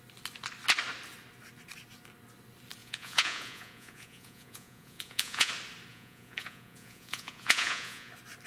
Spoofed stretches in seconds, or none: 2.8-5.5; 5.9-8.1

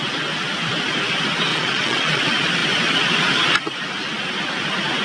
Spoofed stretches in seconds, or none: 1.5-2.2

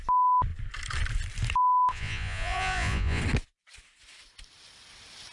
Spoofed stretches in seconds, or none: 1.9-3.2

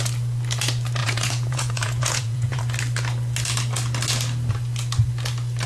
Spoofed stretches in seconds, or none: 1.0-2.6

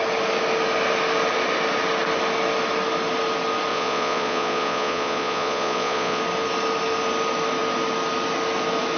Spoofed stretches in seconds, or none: 3.7-6.2